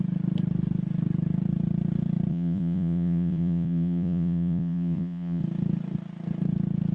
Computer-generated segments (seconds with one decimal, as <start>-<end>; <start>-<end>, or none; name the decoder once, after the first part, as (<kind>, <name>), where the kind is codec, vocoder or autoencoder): 2.3-5.4 (vocoder, Vocos)